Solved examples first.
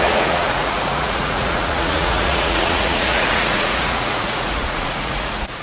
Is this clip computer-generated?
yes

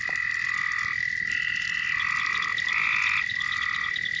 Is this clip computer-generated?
no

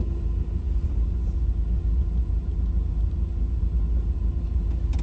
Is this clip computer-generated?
no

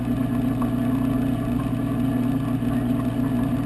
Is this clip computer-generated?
no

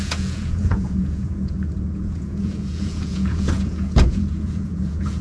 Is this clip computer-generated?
yes